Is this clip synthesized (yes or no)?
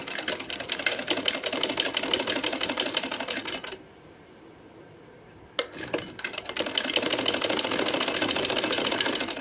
no